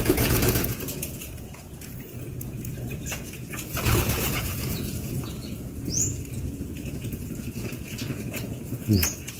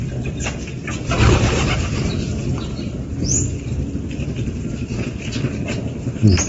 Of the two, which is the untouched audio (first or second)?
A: second